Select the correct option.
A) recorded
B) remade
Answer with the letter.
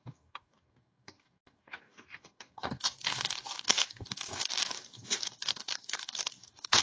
B